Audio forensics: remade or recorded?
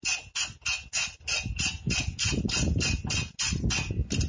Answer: recorded